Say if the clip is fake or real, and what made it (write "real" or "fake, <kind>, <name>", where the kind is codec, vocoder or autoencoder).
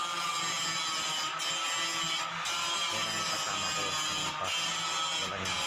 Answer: real